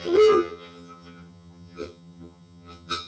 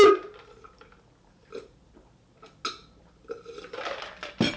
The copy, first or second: first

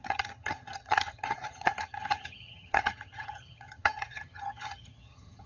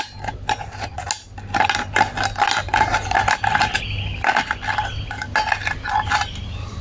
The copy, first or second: first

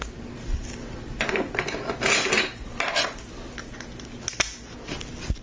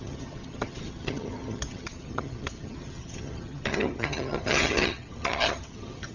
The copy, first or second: second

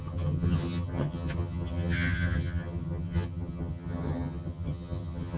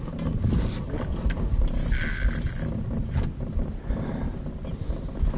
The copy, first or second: first